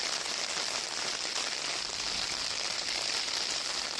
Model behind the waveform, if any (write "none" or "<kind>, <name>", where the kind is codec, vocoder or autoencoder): none